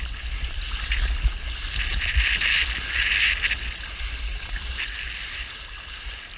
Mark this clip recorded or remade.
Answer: recorded